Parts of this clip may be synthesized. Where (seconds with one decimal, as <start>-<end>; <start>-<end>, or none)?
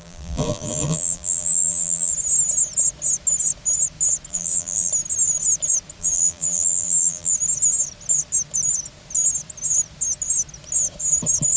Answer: 0.0-2.1; 4.3-4.9; 6.0-7.3